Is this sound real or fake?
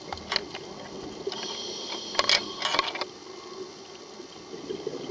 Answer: real